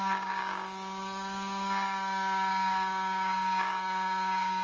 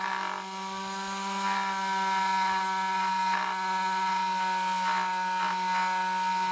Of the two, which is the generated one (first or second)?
first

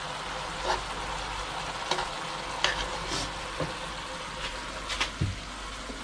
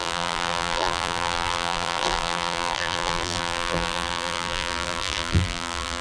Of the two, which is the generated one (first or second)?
second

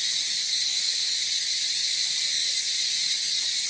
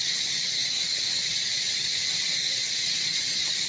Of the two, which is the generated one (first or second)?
second